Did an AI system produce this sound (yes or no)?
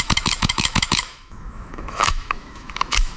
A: yes